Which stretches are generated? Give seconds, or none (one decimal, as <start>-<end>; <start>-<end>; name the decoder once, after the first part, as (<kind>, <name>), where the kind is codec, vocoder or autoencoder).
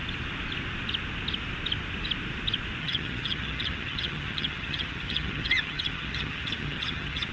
2.8-7.3 (vocoder, HiFi-GAN)